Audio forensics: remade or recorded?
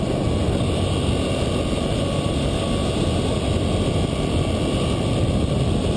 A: recorded